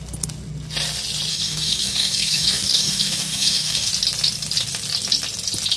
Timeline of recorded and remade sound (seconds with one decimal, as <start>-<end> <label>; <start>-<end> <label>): 0.0-1.3 recorded; 1.3-3.9 remade; 3.9-5.8 recorded